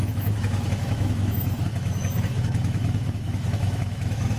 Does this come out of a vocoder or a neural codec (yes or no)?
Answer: yes